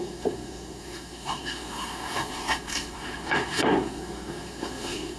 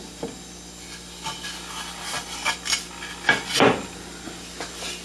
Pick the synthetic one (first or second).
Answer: first